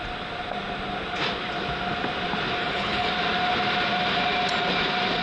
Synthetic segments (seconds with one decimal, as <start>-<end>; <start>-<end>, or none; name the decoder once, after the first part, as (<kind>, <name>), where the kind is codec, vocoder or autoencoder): 2.6-3.1 (codec, HILCodec)